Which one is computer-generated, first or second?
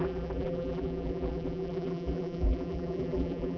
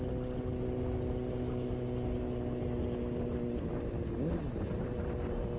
first